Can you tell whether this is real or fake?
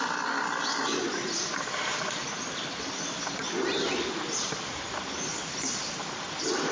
real